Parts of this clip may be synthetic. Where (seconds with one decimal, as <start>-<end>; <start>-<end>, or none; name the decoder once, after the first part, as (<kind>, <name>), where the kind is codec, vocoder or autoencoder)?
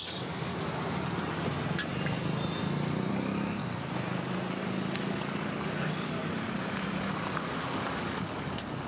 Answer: 0.0-0.5 (codec, DAC); 3.1-3.6; 4.6-6.2; 7.1-8.9